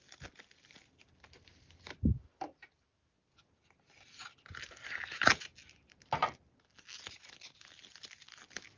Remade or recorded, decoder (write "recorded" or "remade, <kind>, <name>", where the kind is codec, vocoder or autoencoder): recorded